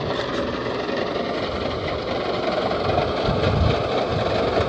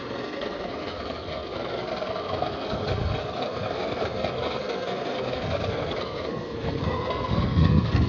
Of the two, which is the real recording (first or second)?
first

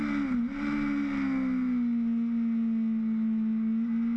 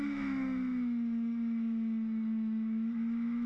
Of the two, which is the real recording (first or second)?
first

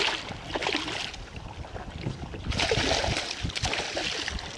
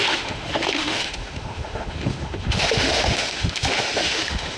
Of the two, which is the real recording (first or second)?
first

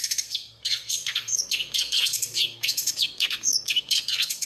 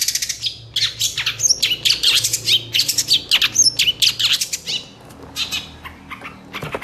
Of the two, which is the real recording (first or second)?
second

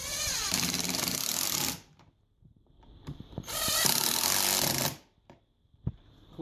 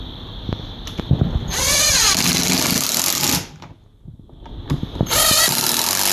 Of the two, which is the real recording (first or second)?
second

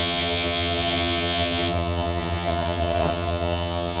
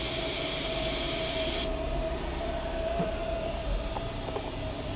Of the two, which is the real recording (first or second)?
second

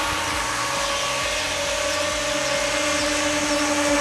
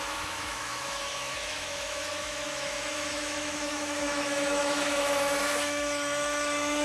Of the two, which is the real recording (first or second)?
first